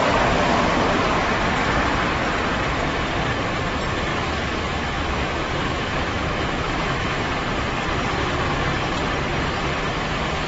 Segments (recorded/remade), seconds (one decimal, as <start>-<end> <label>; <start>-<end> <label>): 0.0-4.1 recorded; 4.1-7.3 remade; 7.3-10.5 recorded

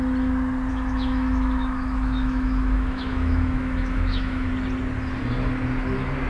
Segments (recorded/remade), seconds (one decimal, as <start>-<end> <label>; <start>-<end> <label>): 0.0-0.7 recorded; 0.7-4.5 remade; 4.5-6.3 recorded